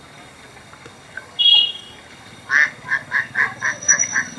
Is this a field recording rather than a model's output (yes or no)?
no